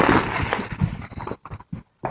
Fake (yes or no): no